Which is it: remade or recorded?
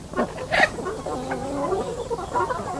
recorded